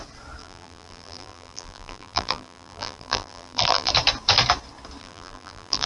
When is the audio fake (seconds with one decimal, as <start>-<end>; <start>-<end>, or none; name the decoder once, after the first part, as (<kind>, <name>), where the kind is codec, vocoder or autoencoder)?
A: 0.4-3.9 (vocoder, BigVGAN v2); 5.0-5.9